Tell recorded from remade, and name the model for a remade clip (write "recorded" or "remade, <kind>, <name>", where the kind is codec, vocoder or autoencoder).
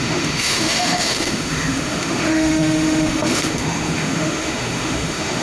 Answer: remade, autoencoder, DAC-VAE